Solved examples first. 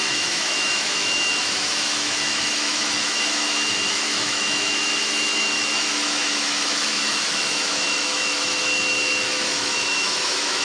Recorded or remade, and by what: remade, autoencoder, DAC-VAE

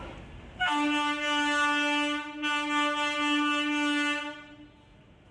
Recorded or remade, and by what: recorded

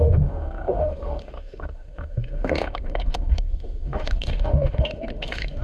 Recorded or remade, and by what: remade, autoencoder, DAC-VAE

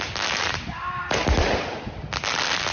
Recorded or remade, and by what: recorded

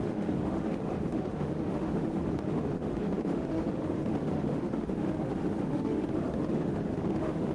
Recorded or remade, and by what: remade, autoencoder, DAC-VAE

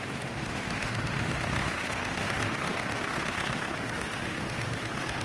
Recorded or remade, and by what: remade, autoencoder, DAC-VAE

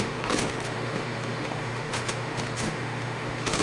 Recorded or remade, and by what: remade, autoencoder, DAC-VAE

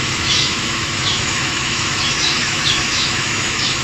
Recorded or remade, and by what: remade, autoencoder, DAC-VAE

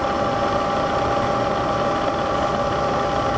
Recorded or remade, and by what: recorded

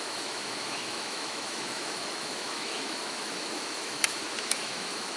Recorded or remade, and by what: remade, autoencoder, DAC-VAE